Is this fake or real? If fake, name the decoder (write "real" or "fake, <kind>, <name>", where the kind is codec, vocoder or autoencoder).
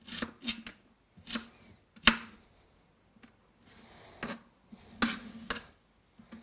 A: real